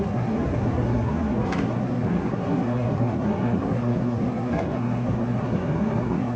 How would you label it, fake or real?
fake